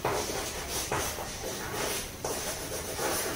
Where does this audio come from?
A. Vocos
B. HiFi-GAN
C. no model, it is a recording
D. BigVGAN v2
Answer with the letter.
D